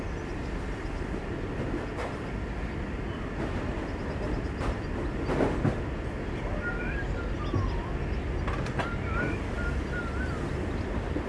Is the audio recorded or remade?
recorded